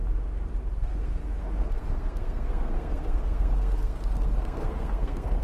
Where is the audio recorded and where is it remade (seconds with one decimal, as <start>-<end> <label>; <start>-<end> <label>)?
0.0-0.7 recorded; 0.7-5.4 remade